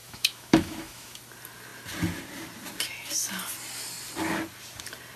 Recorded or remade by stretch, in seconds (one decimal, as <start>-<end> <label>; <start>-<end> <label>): 0.0-1.2 remade; 1.2-5.2 recorded

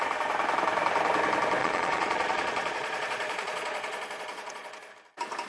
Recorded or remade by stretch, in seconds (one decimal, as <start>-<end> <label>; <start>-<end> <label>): 0.0-1.6 recorded; 1.6-4.9 remade; 4.9-5.5 recorded

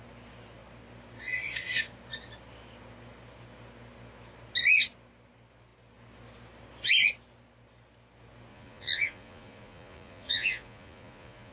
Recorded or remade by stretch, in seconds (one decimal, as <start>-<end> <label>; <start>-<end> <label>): 0.0-8.5 recorded; 8.5-11.5 remade

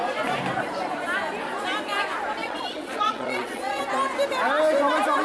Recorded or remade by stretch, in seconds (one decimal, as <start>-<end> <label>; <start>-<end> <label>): 0.0-2.4 recorded; 2.4-3.8 remade; 3.8-5.2 recorded

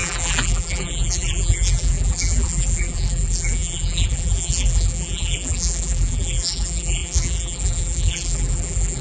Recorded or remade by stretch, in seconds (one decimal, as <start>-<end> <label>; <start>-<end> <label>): 0.0-9.0 remade

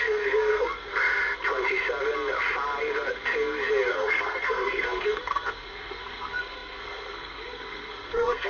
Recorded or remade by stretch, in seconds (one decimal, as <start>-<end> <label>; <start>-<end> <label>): 0.0-0.9 remade; 0.9-3.9 recorded; 3.9-8.5 remade

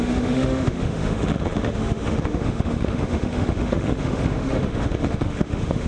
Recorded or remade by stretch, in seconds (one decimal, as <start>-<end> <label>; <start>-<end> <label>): 0.0-5.9 remade